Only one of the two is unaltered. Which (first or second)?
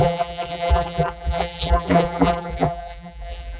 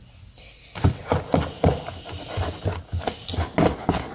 second